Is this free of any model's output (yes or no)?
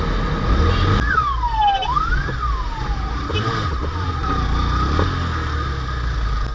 yes